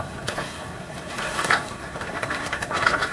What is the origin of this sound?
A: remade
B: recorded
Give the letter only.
A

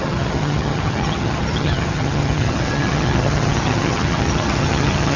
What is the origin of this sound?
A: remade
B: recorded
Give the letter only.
A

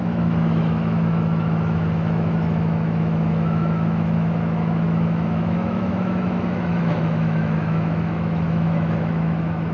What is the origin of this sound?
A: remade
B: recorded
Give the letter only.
A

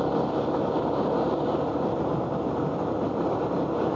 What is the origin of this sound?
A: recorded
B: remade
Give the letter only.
A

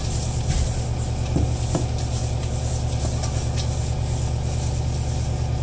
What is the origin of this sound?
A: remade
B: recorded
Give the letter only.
B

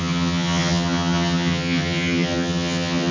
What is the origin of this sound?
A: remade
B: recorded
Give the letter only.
A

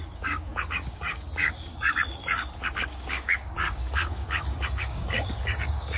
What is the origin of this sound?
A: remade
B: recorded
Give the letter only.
A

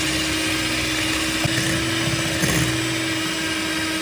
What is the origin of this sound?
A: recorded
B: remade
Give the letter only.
A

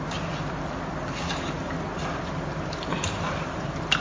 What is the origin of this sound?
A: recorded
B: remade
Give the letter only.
A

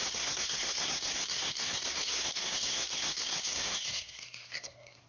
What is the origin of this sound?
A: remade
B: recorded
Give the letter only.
A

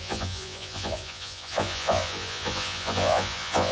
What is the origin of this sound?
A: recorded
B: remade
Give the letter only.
B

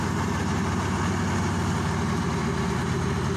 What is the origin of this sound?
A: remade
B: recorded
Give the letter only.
B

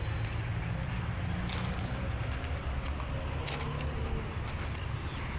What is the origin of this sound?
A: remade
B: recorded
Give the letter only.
B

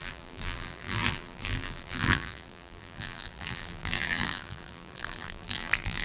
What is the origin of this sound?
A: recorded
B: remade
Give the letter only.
B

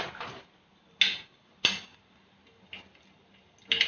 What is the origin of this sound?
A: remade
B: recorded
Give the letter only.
B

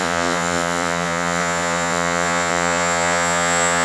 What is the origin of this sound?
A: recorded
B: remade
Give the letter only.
B